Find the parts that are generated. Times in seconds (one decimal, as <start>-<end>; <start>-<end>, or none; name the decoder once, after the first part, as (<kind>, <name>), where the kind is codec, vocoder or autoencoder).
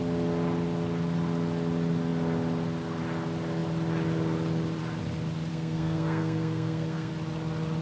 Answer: 5.5-7.1 (codec, SNAC)